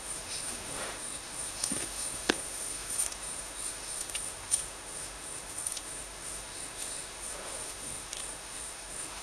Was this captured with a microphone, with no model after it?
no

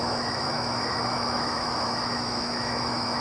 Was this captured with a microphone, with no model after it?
no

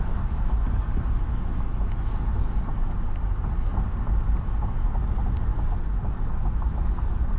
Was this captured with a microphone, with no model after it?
yes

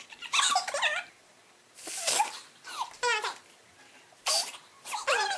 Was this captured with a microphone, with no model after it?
yes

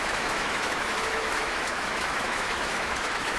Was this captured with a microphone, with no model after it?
no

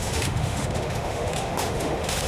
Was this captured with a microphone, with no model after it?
no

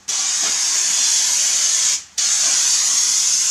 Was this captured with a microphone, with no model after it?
yes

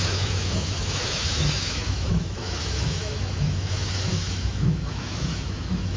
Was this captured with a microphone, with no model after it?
no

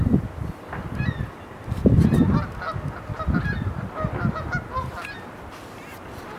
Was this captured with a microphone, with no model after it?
yes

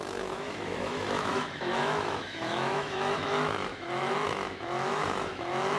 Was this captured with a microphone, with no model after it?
no